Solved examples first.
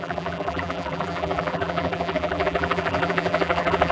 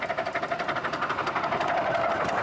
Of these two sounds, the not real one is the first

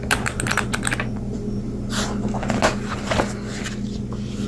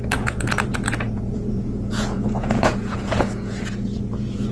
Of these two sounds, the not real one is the second